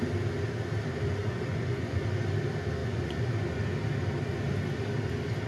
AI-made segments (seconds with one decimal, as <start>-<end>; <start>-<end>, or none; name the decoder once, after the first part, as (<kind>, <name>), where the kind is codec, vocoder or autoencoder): 1.2-2.0 (vocoder, Vocos); 2.8-3.3